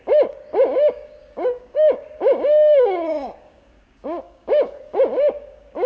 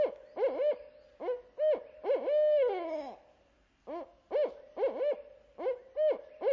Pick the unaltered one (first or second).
second